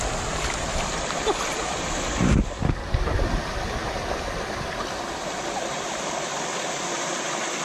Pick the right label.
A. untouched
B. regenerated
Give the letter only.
A